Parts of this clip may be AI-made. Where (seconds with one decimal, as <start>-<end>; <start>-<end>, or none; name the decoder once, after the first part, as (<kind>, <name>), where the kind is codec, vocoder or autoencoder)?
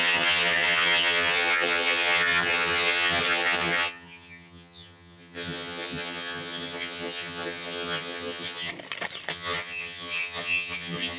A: 0.0-8.7 (vocoder, HiFi-GAN); 9.3-11.2